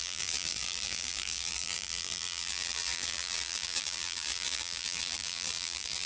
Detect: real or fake fake